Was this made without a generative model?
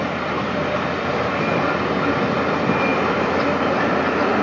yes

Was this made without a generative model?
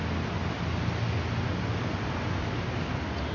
yes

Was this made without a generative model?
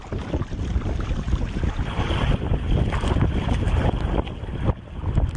yes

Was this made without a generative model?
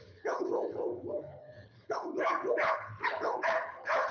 no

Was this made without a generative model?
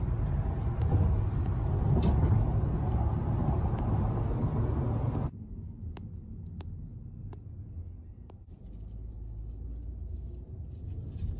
yes